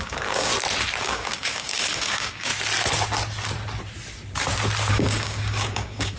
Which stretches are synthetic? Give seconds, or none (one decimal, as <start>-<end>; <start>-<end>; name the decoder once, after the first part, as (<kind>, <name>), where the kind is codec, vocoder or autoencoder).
0.0-0.5 (codec, DAC); 1.0-2.5; 4.9-6.2